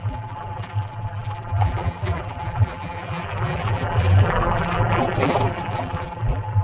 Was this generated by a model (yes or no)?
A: yes